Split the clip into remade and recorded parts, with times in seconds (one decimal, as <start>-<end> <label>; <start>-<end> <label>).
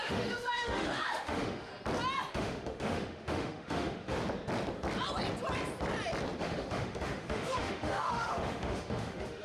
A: 0.0-1.7 remade; 1.7-2.3 recorded; 2.3-4.2 remade; 4.2-6.4 recorded; 6.4-9.4 remade